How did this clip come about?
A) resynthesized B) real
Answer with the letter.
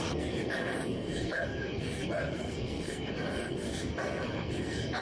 A